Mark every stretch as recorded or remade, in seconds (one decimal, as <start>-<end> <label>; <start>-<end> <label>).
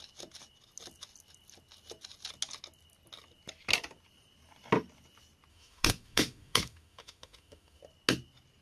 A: 0.0-5.5 recorded; 5.5-7.8 remade; 7.8-8.6 recorded